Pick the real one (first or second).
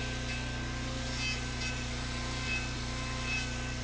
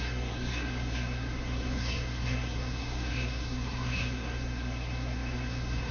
first